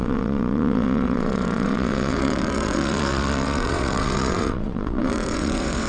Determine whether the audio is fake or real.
fake